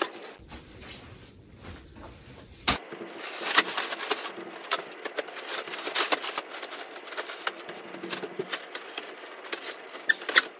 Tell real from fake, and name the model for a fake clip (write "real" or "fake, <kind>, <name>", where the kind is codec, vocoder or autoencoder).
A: real